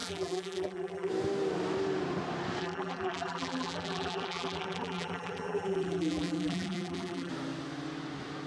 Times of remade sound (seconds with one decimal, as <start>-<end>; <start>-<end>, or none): 0.0-1.1; 2.6-7.3